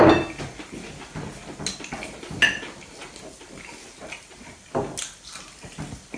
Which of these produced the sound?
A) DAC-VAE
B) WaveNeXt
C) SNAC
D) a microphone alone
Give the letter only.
D